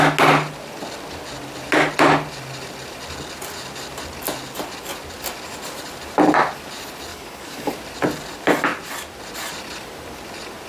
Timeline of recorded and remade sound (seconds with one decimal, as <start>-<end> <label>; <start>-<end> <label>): 0.0-7.1 recorded; 7.1-7.7 remade; 7.7-10.7 recorded